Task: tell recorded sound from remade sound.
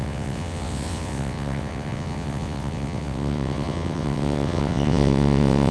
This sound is remade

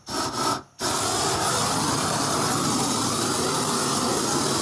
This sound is recorded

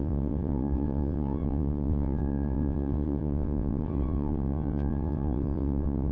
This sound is remade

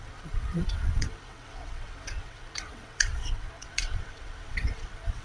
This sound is remade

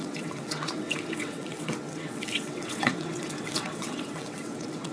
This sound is remade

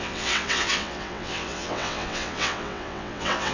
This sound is remade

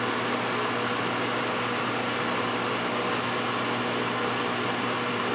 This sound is recorded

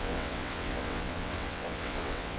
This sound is remade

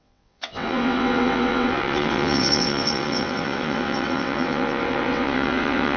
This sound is remade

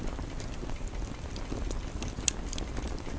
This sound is recorded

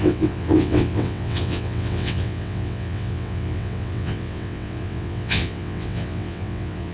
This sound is remade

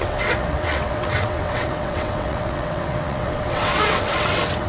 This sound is remade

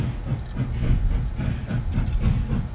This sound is recorded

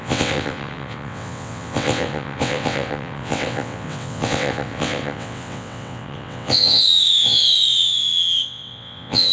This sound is remade